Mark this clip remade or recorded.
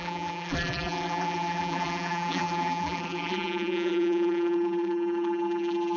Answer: remade